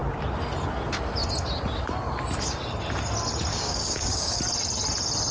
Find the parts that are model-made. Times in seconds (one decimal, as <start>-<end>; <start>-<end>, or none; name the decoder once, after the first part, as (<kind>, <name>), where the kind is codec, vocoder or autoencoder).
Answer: 3.5-4.4 (codec, DAC)